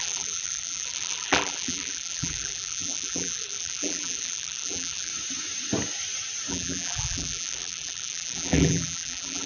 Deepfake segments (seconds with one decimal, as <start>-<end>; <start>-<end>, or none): 0.0-5.1; 6.5-9.5